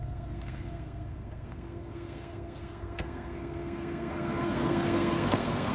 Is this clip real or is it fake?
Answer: fake